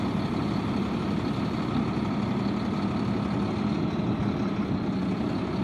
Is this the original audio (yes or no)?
yes